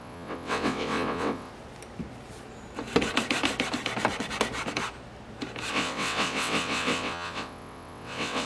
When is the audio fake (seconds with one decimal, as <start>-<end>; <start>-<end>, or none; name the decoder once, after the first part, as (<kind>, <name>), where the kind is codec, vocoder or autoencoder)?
0.0-1.5 (vocoder, WaveNeXt); 5.7-8.5